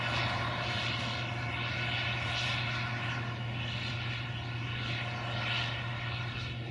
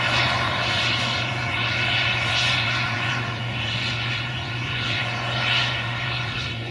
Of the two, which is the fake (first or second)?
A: second